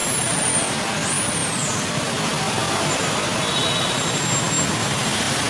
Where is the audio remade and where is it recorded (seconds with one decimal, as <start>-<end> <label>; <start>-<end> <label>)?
0.0-5.5 recorded